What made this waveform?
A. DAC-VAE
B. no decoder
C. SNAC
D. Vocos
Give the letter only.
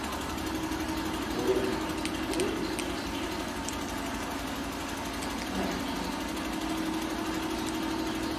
B